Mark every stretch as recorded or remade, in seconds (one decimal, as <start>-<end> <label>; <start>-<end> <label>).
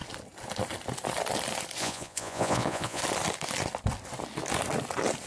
0.0-1.8 recorded; 1.8-3.0 remade; 3.0-5.3 recorded